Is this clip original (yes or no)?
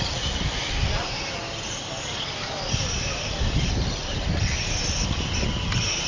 yes